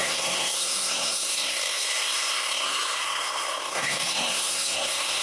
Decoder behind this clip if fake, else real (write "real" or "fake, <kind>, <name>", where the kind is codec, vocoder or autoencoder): fake, codec, SNAC